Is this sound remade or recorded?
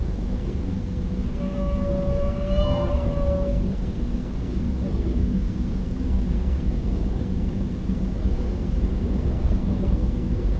remade